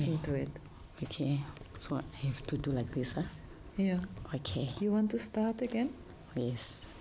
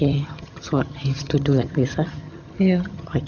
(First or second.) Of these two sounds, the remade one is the second